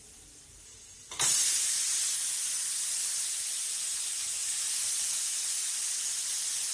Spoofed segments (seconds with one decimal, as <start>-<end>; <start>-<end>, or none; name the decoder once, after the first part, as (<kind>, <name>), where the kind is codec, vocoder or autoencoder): none